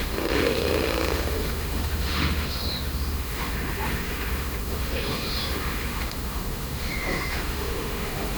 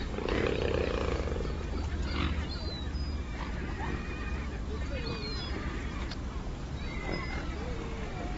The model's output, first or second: first